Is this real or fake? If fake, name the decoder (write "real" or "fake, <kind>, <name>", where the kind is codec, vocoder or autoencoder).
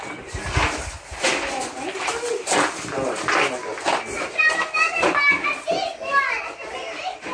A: real